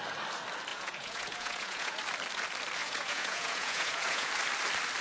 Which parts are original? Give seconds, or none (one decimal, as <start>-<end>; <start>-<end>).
0.0-0.7; 2.0-2.8; 4.3-5.0